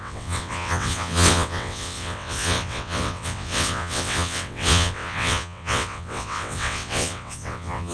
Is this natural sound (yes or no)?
no